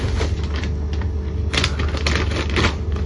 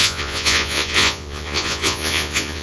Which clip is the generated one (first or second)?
second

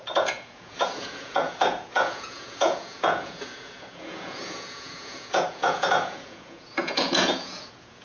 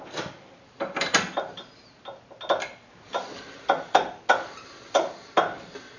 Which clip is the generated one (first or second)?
first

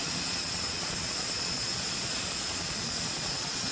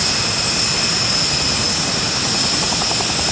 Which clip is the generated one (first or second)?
first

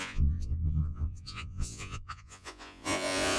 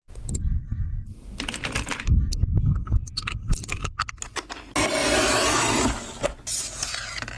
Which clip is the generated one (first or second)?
first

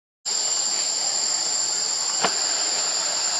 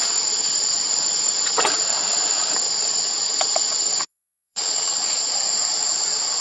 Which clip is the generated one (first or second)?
second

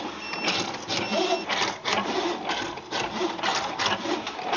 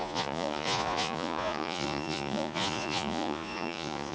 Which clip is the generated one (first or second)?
second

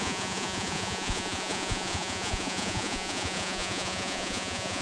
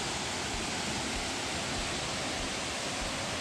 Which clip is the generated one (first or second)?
first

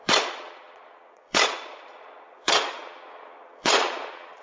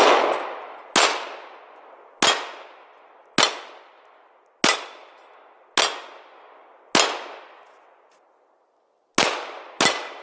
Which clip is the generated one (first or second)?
first